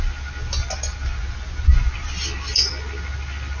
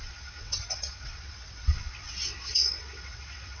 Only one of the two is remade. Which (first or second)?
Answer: second